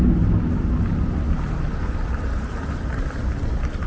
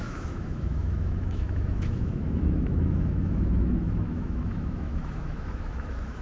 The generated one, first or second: second